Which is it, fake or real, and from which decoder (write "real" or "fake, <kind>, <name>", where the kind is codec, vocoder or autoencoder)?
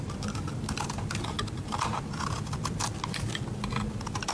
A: real